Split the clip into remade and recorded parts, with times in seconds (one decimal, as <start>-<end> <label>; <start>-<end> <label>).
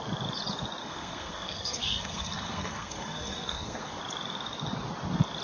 0.0-0.8 recorded; 0.8-4.0 remade; 4.0-5.4 recorded